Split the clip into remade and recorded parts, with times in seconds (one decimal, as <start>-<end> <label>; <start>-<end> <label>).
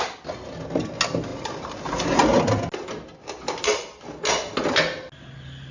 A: 0.0-5.7 recorded